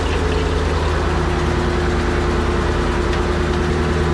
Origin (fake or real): real